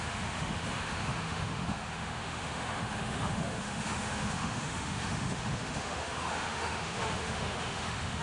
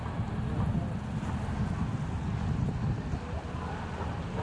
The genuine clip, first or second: second